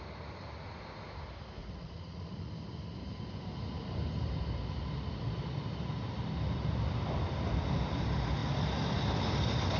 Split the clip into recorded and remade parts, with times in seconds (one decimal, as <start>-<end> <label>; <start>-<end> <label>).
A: 0.0-1.6 recorded; 1.6-2.5 remade; 2.5-9.8 recorded